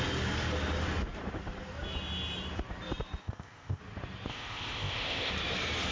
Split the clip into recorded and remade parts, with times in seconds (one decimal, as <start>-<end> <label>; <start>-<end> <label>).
0.0-3.2 recorded; 3.2-3.8 remade; 3.8-4.3 recorded; 4.3-5.3 remade; 5.3-5.9 recorded